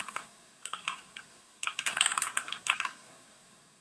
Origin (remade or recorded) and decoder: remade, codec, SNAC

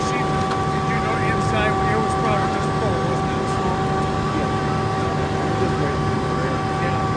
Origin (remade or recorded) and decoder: recorded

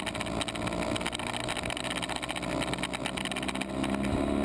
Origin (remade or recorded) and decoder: recorded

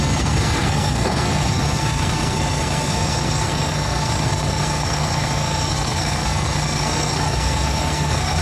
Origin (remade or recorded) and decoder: remade, codec, SNAC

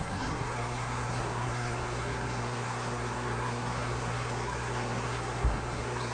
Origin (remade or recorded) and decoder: remade, codec, SNAC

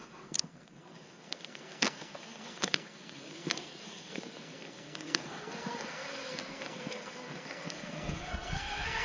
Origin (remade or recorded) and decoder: remade, codec, SNAC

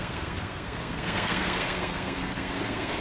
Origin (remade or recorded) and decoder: remade, codec, SNAC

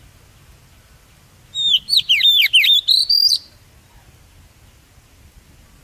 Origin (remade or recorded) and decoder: recorded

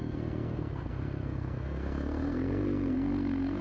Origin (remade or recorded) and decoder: remade, codec, SNAC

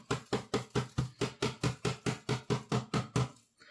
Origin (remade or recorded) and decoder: recorded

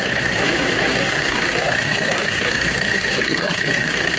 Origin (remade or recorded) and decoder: remade, codec, SNAC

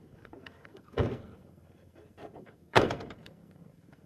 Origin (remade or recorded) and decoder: remade, codec, SNAC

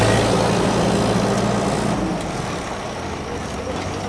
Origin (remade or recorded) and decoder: recorded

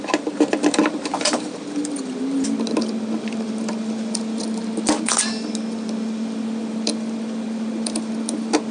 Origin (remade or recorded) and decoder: recorded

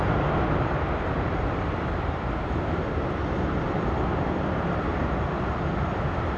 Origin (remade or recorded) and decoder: recorded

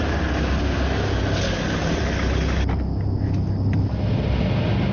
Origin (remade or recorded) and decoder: recorded